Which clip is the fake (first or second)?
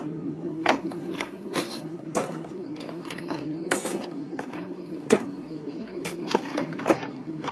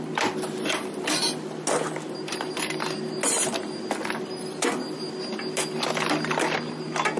first